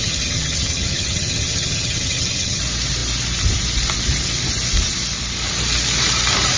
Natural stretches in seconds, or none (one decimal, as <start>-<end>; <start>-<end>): 2.6-6.6